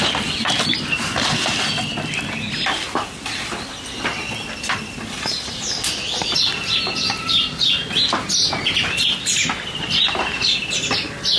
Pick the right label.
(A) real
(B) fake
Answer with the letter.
A